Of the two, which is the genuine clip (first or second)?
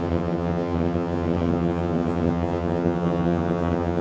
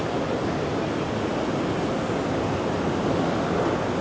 second